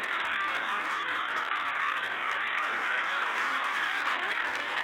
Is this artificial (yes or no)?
yes